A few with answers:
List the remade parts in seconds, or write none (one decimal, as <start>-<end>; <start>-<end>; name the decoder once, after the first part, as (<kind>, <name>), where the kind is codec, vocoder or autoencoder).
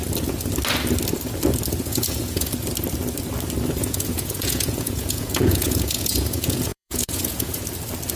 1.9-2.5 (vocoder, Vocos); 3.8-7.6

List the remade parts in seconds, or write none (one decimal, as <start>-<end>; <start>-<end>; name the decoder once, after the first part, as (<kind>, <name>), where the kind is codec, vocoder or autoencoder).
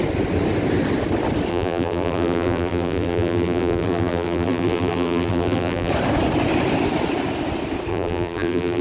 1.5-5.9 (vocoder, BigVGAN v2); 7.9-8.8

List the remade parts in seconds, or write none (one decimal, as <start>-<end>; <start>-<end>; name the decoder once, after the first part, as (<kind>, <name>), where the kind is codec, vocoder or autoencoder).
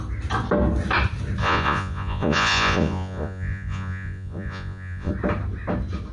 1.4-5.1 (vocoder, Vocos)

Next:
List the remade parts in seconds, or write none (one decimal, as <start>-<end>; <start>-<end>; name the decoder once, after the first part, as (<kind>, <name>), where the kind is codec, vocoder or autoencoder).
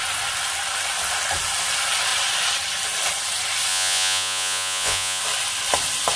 3.7-5.2 (vocoder, Vocos)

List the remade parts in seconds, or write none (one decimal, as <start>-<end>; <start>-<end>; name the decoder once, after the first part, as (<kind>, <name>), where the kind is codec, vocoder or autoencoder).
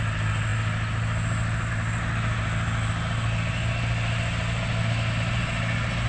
none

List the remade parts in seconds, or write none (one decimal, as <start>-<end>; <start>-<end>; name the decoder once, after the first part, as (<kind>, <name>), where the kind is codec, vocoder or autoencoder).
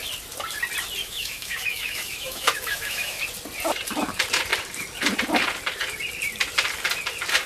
1.0-3.2 (autoencoder, DAC-VAE)